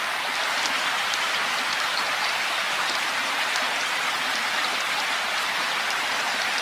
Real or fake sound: real